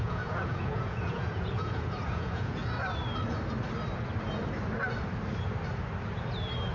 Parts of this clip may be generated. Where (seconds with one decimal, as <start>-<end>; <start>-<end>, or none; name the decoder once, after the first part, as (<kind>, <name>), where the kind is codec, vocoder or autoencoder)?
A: 0.0-2.6 (vocoder, Vocos)

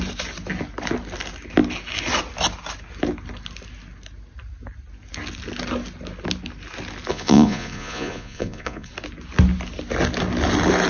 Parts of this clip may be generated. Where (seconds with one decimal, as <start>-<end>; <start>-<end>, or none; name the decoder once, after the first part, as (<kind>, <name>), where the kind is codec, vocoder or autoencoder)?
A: 7.1-8.9 (vocoder, Vocos)

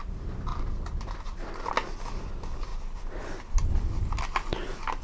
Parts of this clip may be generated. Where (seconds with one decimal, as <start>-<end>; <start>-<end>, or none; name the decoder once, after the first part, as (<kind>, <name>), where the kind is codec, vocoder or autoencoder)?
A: 0.5-1.7 (vocoder, BigVGAN v2); 2.7-4.0

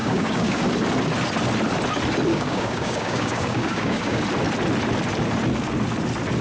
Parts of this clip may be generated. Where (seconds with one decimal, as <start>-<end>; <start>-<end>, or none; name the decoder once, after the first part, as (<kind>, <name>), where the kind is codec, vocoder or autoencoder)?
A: 0.0-0.6 (codec, DAC); 2.3-4.2

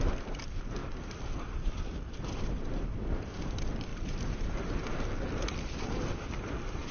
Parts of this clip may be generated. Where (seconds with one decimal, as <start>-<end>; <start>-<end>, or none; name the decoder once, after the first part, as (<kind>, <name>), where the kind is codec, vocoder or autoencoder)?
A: 3.9-5.9 (vocoder, BigVGAN v2)

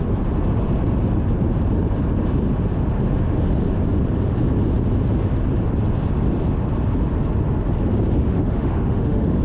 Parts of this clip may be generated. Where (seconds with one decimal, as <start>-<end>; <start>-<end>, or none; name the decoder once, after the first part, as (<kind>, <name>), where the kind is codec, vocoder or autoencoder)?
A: 8.2-9.4 (autoencoder, DAC-VAE)

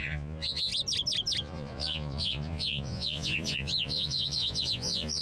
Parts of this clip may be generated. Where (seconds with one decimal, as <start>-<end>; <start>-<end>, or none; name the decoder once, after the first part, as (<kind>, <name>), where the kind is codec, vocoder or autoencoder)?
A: 0.0-0.7 (vocoder, Vocos); 1.4-5.2

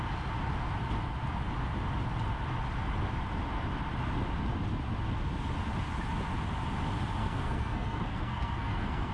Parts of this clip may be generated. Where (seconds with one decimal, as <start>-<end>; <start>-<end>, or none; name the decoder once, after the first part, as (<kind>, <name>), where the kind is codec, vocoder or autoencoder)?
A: 7.2-9.1 (codec, SNAC)